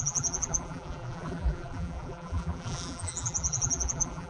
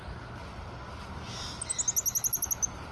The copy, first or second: first